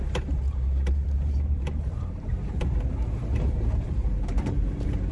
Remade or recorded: remade